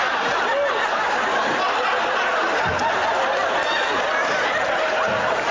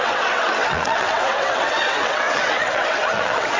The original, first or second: first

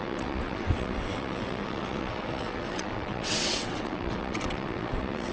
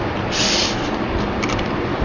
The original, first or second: second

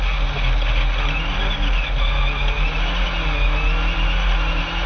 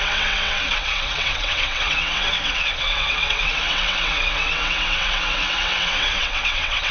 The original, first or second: first